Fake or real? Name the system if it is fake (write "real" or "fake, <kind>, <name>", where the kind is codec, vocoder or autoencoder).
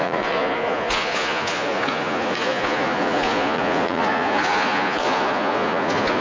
fake, vocoder, Vocos